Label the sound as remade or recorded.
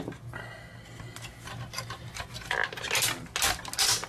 recorded